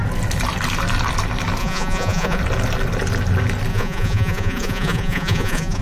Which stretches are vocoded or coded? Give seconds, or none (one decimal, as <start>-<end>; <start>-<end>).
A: 1.6-2.4; 3.7-5.8